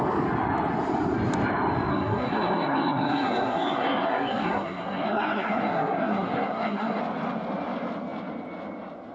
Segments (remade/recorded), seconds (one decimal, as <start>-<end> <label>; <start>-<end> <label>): 0.0-1.9 recorded; 1.9-7.0 remade; 7.0-9.1 recorded